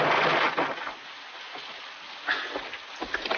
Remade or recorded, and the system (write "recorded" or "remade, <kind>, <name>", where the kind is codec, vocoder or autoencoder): recorded